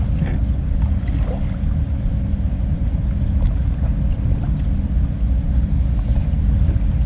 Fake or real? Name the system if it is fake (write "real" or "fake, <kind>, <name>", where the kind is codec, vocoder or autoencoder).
real